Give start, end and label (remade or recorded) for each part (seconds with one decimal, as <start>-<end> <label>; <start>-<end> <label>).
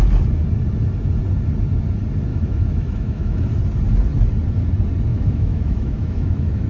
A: 0.0-2.3 recorded; 2.3-3.4 remade; 3.4-5.1 recorded; 5.1-6.7 remade